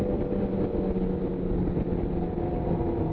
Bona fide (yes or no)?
yes